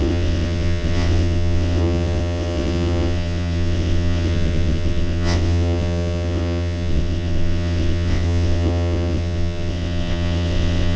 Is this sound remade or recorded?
remade